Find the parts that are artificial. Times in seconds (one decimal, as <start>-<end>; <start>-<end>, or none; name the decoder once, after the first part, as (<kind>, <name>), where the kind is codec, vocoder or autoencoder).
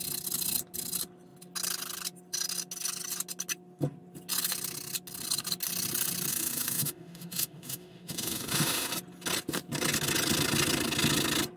6.3-8.9 (autoencoder, DAC-VAE)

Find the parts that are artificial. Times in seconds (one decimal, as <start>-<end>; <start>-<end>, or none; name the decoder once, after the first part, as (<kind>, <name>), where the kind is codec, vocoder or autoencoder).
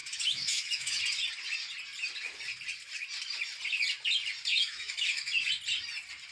0.0-1.0 (autoencoder, DAC-VAE); 4.5-5.5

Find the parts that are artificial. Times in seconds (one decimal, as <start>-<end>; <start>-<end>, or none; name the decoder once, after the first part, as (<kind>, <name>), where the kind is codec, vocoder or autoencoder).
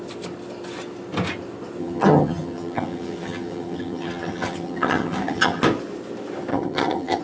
1.8-5.6 (vocoder, HiFi-GAN); 6.5-7.2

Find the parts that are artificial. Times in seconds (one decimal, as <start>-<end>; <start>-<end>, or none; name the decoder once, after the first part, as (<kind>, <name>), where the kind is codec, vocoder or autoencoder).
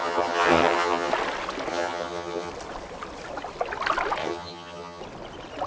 0.0-1.1 (vocoder, HiFi-GAN); 1.7-2.5; 4.2-5.0